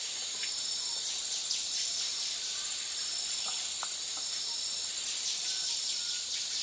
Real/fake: fake